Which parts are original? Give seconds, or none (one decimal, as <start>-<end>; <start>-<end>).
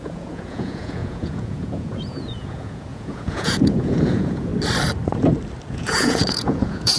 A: 4.5-5.7